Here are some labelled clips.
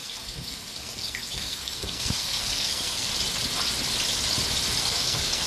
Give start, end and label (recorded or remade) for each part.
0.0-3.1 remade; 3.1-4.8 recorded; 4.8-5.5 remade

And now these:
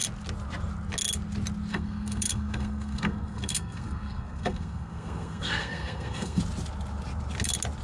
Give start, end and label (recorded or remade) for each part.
0.0-1.7 recorded; 1.7-6.4 remade; 6.4-7.8 recorded

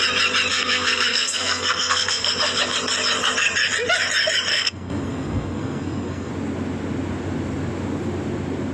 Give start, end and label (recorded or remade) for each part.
0.0-0.5 recorded; 0.5-2.3 remade; 2.3-4.5 recorded; 4.5-6.3 remade; 6.3-8.7 recorded

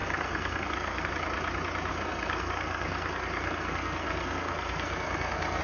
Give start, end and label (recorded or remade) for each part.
0.0-1.1 remade; 1.1-1.9 recorded; 1.9-5.6 remade